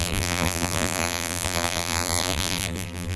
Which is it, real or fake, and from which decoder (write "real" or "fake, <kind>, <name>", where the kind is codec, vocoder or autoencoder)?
fake, vocoder, BigVGAN v2